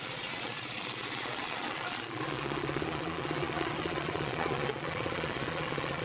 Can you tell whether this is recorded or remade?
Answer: remade